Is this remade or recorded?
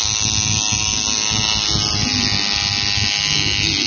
recorded